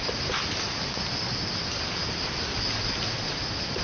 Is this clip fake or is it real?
real